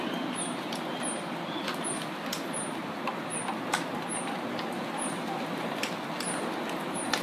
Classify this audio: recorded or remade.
recorded